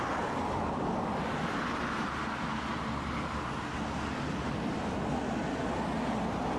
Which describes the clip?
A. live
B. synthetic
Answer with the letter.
A